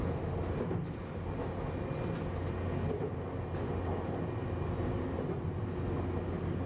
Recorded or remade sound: recorded